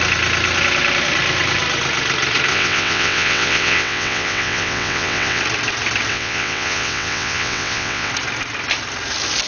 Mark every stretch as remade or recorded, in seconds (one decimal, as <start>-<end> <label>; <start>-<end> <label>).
0.0-2.5 recorded; 2.5-5.4 remade; 5.4-6.1 recorded; 6.1-8.1 remade; 8.1-9.5 recorded